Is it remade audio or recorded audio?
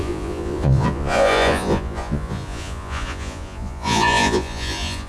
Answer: remade